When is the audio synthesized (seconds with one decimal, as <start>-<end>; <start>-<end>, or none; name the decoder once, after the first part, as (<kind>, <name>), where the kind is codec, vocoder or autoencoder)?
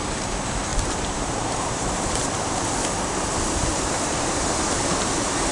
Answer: 0.7-2.6 (vocoder, BigVGAN v2); 3.7-5.5